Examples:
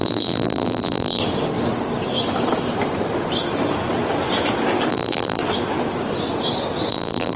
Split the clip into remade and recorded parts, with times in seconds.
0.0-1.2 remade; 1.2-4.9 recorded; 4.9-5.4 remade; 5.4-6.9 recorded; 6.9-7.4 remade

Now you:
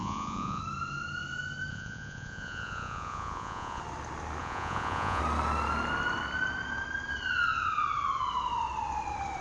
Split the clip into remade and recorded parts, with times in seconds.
0.0-0.6 remade; 0.6-1.7 recorded; 1.7-3.8 remade; 3.8-4.4 recorded; 4.4-5.2 remade; 5.2-9.4 recorded

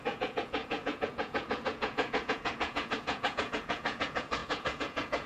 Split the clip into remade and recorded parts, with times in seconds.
0.0-5.3 remade

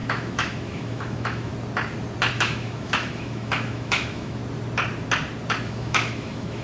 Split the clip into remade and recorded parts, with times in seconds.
0.0-1.5 remade; 1.5-2.3 recorded; 2.3-4.4 remade; 4.4-5.6 recorded; 5.6-6.6 remade

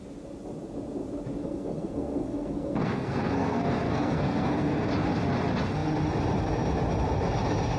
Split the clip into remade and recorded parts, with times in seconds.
0.0-1.4 recorded; 1.4-4.9 remade; 4.9-7.8 recorded

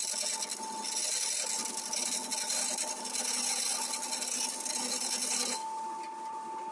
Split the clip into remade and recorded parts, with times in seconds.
0.0-6.7 recorded

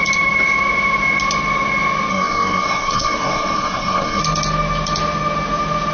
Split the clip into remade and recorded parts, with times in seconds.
0.0-2.1 recorded; 2.1-4.2 remade; 4.2-5.9 recorded

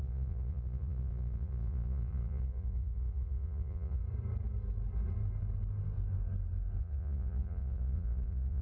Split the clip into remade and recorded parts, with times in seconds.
0.0-4.0 remade; 4.0-6.8 recorded; 6.8-8.6 remade